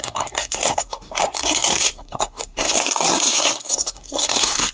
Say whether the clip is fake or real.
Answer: fake